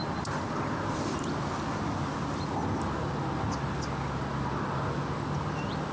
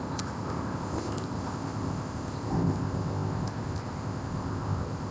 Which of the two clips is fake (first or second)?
second